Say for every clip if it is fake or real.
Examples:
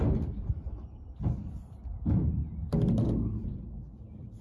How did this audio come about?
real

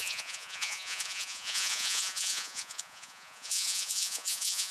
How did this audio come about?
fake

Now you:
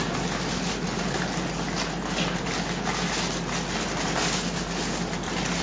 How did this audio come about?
real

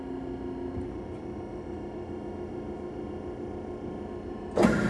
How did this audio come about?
real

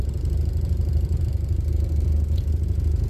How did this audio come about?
fake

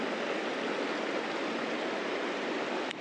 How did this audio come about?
real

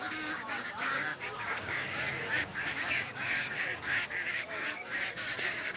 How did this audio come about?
fake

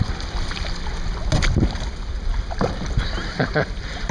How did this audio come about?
real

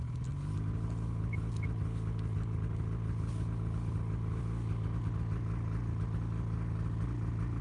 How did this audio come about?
real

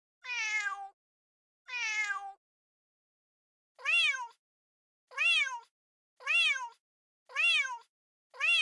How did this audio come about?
real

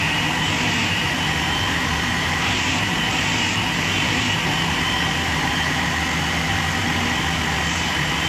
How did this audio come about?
fake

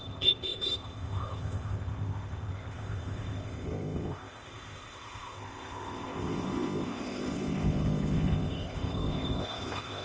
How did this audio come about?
fake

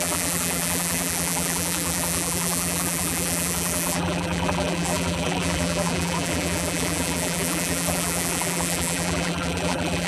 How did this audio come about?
fake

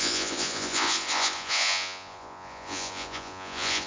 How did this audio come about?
fake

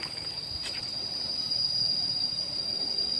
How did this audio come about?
fake